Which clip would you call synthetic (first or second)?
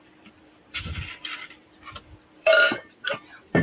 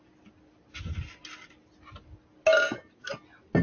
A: first